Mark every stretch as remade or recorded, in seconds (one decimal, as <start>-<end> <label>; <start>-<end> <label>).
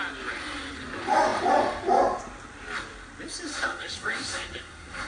0.0-3.5 recorded; 3.5-5.1 remade